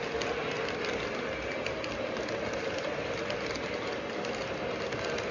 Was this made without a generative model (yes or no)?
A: yes